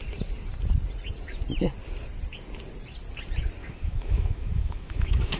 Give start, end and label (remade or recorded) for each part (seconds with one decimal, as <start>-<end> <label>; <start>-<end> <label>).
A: 0.0-3.6 recorded; 3.6-5.4 remade